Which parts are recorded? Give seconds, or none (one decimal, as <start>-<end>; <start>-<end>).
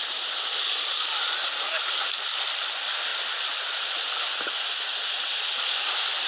0.0-6.3